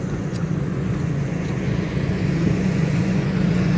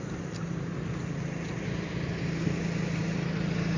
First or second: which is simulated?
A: first